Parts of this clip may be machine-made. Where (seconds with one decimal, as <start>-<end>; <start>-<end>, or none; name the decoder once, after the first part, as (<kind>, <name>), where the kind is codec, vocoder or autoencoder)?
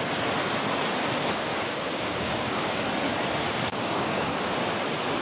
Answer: 1.5-2.8 (codec, DAC); 3.7-4.3